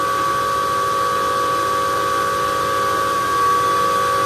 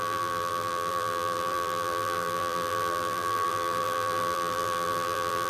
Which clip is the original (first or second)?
first